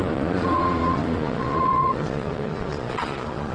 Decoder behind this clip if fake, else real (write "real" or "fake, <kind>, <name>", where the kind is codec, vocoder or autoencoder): fake, vocoder, Vocos